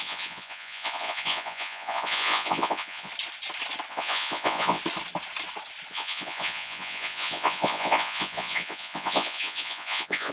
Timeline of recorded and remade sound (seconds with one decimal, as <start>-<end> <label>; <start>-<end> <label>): 0.0-3.1 remade; 3.1-3.9 recorded; 3.9-4.8 remade; 4.8-5.9 recorded; 5.9-10.3 remade